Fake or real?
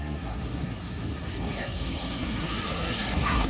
fake